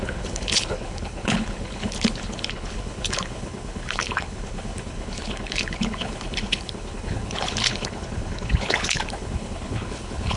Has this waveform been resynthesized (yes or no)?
yes